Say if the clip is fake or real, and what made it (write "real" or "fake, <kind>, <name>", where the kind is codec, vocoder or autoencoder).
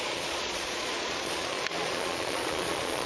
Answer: fake, vocoder, Vocos